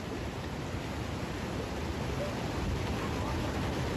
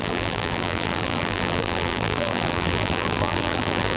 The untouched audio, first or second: first